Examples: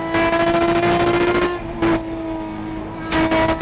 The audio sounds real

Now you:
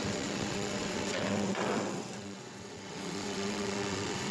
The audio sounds fake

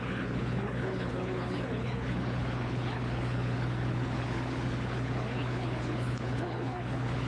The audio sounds fake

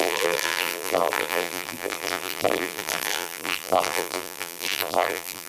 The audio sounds fake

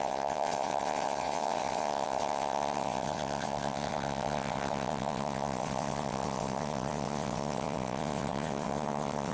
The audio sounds fake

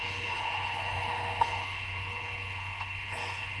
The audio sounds fake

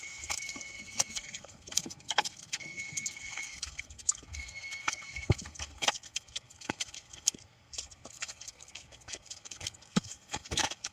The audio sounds fake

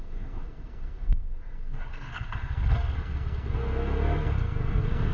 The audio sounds fake